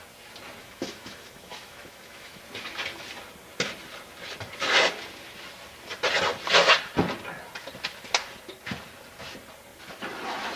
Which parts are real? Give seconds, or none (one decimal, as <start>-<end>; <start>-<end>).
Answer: 0.0-0.6; 2.4-10.6